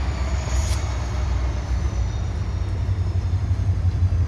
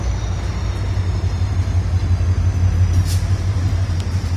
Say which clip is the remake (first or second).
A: first